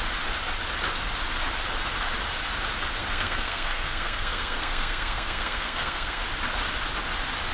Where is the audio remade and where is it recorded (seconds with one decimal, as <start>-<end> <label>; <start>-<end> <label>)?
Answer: 0.0-3.0 recorded; 3.0-6.2 remade; 6.2-7.5 recorded